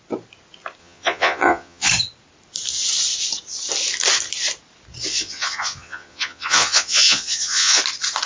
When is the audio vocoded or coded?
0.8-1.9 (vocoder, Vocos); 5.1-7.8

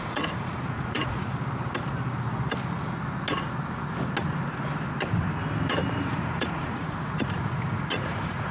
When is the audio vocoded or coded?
0.0-1.4 (vocoder, Vocos); 6.1-8.5